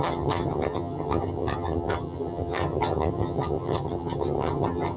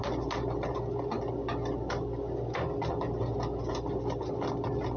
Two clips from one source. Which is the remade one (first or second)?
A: first